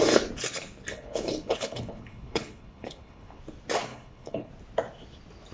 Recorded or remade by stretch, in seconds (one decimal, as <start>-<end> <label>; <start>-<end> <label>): 0.0-0.9 recorded; 0.9-3.4 remade; 3.4-3.9 recorded; 3.9-4.5 remade; 4.5-5.5 recorded